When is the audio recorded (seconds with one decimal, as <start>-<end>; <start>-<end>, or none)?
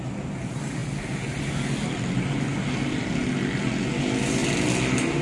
0.0-5.2